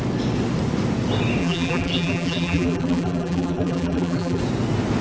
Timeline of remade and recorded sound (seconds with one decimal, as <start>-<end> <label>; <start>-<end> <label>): 0.0-1.4 recorded; 1.4-4.4 remade; 4.4-5.0 recorded